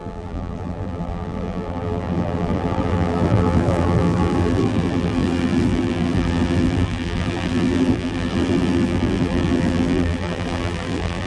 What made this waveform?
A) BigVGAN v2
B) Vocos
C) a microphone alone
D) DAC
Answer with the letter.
A